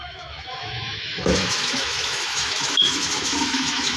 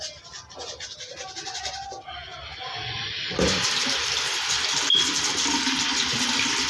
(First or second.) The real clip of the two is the second